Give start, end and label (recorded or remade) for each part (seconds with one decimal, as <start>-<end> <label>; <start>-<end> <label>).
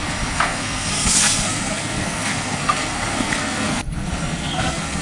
0.0-5.0 remade